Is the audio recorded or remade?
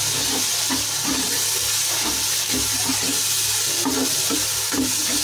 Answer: recorded